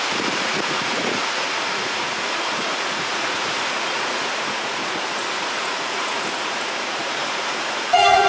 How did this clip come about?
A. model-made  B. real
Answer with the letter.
A